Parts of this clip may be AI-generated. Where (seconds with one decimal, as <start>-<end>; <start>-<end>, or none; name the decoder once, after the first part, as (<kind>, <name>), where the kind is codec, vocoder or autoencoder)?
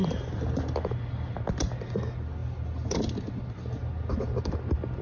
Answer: none